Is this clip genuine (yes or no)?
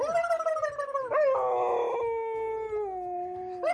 yes